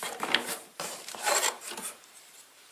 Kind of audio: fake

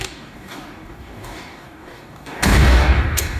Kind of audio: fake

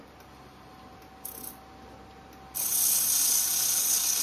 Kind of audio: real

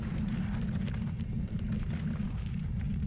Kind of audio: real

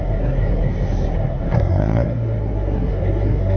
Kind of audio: fake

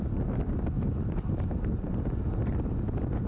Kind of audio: real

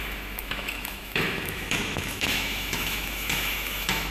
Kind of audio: fake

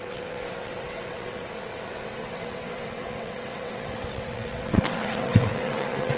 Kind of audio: fake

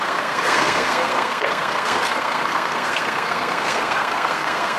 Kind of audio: fake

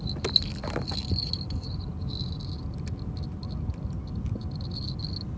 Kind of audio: real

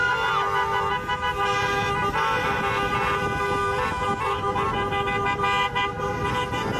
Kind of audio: real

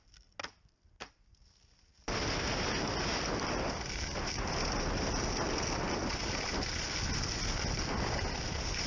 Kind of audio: real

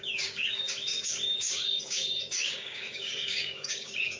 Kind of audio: fake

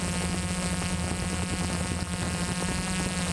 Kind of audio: real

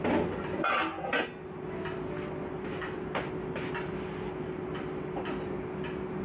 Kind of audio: real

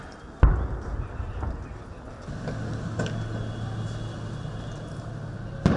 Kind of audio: real